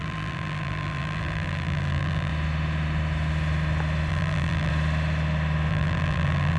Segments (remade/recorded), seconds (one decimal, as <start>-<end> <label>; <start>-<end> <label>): 0.0-2.3 remade; 2.3-4.1 recorded; 4.1-4.7 remade; 4.7-5.7 recorded; 5.7-6.6 remade